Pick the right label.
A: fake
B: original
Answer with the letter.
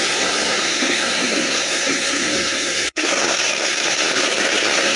A